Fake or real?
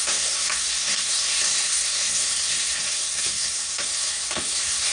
fake